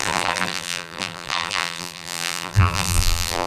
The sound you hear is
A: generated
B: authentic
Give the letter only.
A